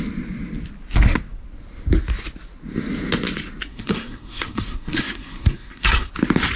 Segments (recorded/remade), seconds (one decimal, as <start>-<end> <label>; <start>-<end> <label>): 0.0-3.7 recorded; 3.7-6.1 remade; 6.1-6.6 recorded